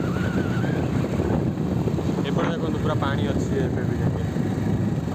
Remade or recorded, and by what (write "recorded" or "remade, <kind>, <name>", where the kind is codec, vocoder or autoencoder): recorded